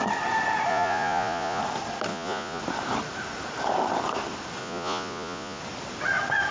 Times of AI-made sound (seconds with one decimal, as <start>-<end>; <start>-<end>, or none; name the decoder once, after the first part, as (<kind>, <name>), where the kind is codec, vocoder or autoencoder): 0.7-1.6 (vocoder, Vocos); 2.1-2.6; 4.6-5.6